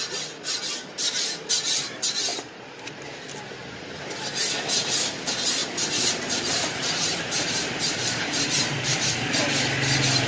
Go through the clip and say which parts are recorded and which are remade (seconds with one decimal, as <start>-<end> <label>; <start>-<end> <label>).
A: 0.0-2.3 recorded; 2.3-3.0 remade; 3.0-3.6 recorded; 3.6-4.1 remade; 4.1-5.6 recorded; 5.6-9.1 remade; 9.1-10.3 recorded